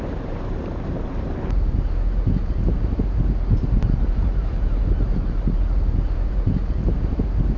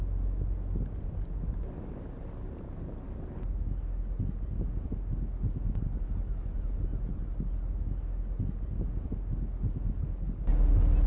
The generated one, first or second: first